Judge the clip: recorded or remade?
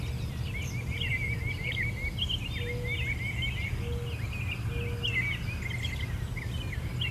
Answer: recorded